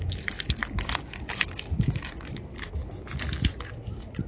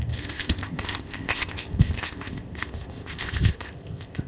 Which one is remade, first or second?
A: second